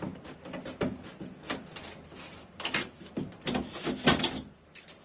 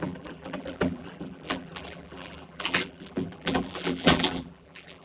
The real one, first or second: first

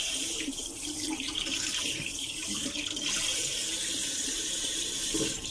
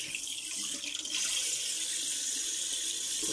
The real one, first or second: second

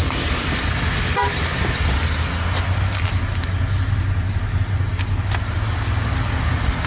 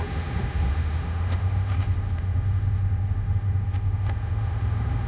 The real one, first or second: first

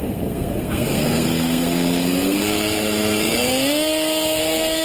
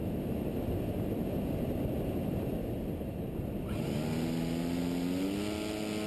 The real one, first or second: second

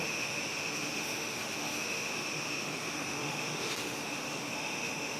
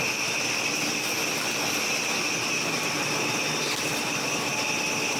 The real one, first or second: second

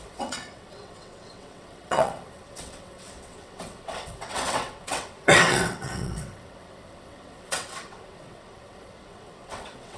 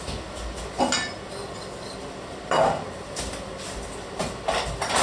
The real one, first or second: second